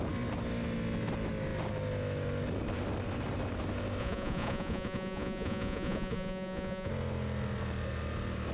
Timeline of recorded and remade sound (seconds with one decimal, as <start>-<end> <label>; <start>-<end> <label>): 0.0-4.0 recorded; 4.0-6.9 remade; 6.9-8.5 recorded